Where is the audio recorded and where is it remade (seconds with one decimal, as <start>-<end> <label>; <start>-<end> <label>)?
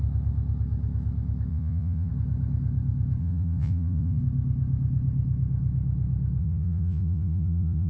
0.0-1.5 recorded; 1.5-2.1 remade; 2.1-3.2 recorded; 3.2-4.2 remade; 4.2-6.4 recorded; 6.4-7.9 remade